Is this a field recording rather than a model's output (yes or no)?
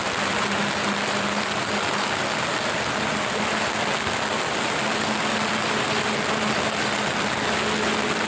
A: yes